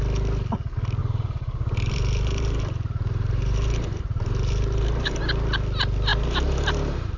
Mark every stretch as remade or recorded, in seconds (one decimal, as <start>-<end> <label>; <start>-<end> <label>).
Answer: 0.0-1.0 recorded; 1.0-5.2 remade; 5.2-6.1 recorded; 6.1-7.2 remade